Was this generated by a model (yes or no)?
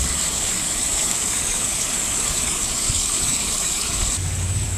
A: yes